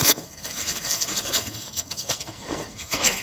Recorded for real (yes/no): no